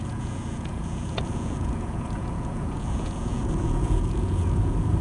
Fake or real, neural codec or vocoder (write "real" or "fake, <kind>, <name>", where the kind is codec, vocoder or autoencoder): fake, vocoder, Vocos